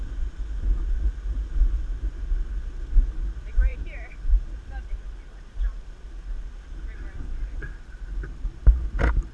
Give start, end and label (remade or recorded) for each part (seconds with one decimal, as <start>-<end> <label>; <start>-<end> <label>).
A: 0.0-9.3 recorded

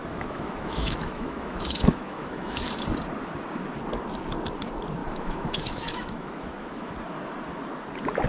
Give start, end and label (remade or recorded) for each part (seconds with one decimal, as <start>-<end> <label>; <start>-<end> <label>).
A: 0.0-2.7 remade; 2.7-5.0 recorded; 5.0-6.9 remade; 6.9-8.3 recorded

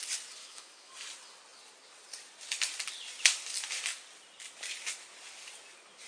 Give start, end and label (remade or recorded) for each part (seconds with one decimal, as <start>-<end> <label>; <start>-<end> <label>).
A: 0.0-0.4 recorded; 0.4-0.9 remade; 0.9-6.1 recorded

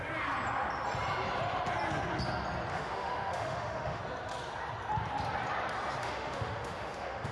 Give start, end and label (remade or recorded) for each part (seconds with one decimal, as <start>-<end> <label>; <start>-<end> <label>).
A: 0.0-2.7 recorded; 2.7-4.0 remade; 4.0-6.0 recorded; 6.0-7.3 remade